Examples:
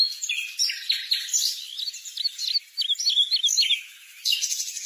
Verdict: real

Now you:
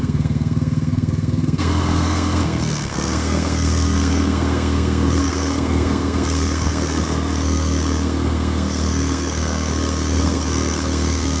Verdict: fake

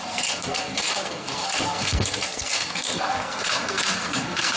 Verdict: fake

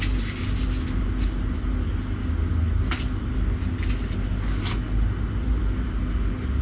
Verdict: real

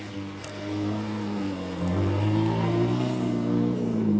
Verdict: fake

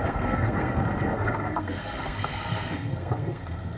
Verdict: fake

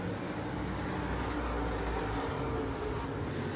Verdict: real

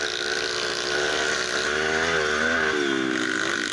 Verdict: real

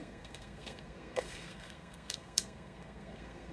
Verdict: fake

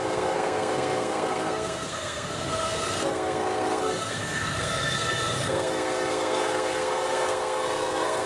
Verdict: fake